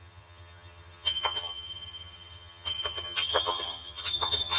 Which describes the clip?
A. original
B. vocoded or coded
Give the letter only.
B